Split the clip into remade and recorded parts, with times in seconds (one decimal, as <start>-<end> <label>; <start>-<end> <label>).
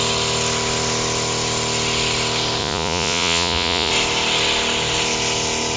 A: 0.0-2.6 recorded; 2.6-3.9 remade; 3.9-5.8 recorded